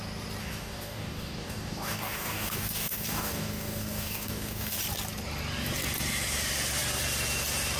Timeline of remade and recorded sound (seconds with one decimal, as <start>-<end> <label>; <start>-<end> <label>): 0.0-0.4 recorded; 0.4-4.8 remade; 4.8-7.8 recorded